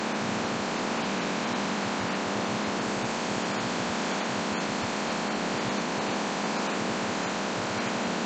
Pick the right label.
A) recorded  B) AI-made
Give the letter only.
A